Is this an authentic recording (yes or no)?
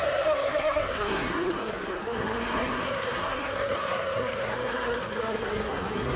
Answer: no